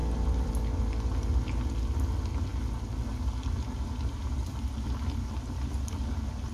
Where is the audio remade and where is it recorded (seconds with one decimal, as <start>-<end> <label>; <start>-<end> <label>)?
0.0-0.5 remade; 0.5-6.5 recorded